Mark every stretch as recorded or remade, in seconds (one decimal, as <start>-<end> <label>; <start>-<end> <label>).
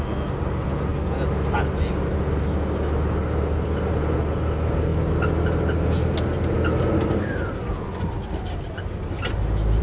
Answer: 0.0-9.8 recorded